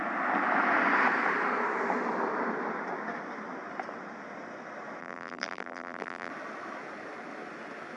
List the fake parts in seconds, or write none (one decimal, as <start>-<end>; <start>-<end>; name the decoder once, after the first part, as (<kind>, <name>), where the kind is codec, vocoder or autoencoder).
5.0-6.3 (vocoder, BigVGAN v2)